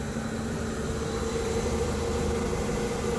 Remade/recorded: recorded